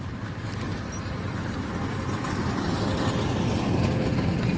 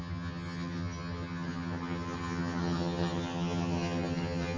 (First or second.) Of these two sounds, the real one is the first